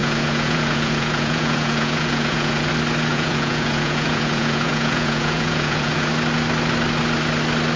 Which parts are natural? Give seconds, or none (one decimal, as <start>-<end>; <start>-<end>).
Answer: 2.7-3.1; 6.1-7.8